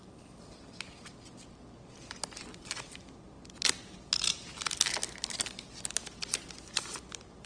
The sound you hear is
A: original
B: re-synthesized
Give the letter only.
A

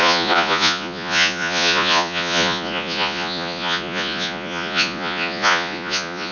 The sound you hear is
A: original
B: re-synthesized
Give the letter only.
B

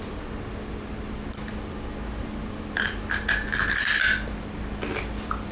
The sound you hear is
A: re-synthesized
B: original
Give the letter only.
B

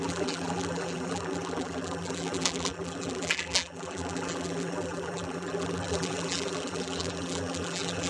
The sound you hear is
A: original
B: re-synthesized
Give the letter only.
B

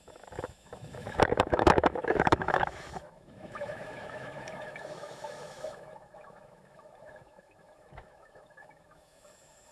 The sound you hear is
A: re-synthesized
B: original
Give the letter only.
A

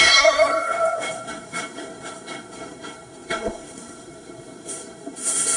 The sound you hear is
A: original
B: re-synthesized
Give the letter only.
B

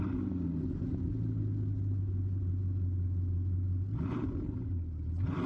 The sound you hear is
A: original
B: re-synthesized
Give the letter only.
A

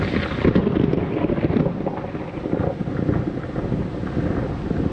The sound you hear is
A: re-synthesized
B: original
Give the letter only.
B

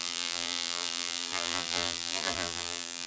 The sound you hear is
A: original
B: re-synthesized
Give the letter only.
B